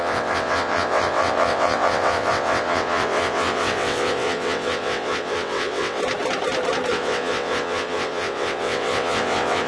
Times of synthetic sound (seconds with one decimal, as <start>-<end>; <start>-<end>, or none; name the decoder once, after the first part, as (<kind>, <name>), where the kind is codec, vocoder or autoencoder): 0.0-6.0 (vocoder, WaveNeXt); 6.9-9.7